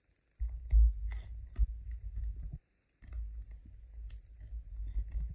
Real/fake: real